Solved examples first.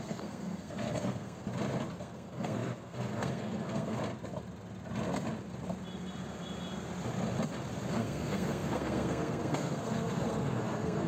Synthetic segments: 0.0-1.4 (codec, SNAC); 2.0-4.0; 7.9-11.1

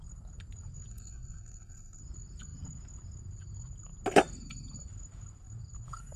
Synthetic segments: 0.9-2.0 (codec, SNAC)